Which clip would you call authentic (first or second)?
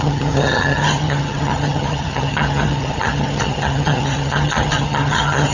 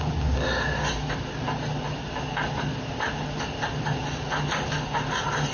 second